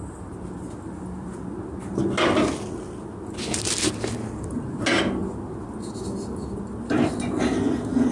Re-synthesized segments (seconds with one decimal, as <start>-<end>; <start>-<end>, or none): none